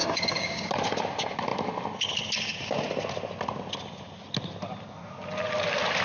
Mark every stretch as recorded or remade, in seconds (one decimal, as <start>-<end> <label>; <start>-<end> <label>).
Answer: 0.0-0.7 remade; 0.7-6.0 recorded